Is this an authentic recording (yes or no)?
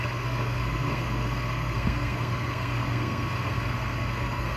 no